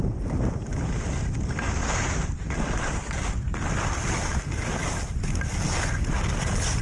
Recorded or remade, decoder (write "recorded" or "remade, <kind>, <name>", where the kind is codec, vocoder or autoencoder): recorded